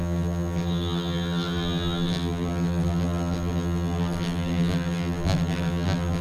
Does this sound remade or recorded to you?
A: remade